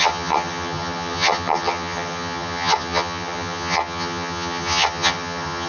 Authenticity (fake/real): fake